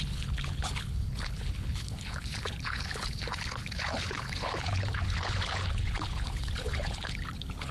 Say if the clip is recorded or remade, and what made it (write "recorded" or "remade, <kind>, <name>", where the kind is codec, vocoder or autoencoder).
remade, codec, HILCodec